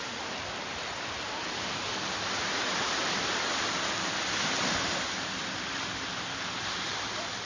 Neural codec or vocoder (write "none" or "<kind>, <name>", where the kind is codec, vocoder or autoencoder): none